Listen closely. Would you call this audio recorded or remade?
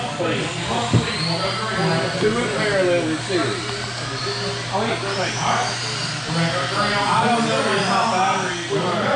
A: recorded